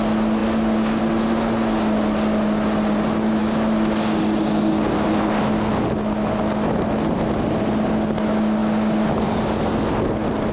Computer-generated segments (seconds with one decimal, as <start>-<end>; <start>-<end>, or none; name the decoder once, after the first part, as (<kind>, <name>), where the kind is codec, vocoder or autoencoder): none